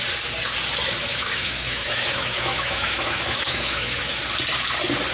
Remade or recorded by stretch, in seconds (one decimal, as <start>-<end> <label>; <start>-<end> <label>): 0.0-1.1 recorded; 1.1-4.2 remade; 4.2-5.1 recorded